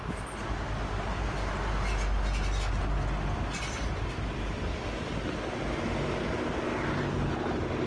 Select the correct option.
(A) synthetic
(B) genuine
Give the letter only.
B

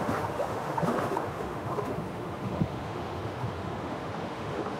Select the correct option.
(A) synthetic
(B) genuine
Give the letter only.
A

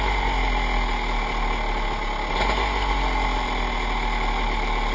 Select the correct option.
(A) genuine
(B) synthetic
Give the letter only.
A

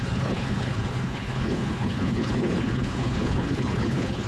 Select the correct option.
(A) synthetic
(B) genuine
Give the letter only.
A